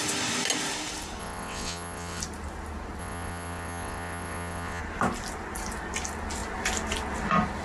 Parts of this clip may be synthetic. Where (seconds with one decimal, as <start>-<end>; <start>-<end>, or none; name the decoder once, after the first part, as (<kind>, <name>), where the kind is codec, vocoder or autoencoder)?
1.2-2.2 (vocoder, WaveNeXt); 3.0-4.8